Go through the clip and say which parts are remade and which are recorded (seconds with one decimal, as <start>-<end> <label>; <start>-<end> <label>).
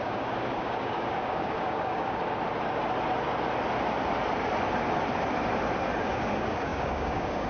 0.0-2.2 remade; 2.2-6.0 recorded; 6.0-7.5 remade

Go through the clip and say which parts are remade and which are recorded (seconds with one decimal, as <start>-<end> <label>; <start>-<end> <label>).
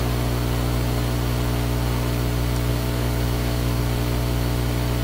0.0-2.7 recorded; 2.7-3.8 remade; 3.8-5.0 recorded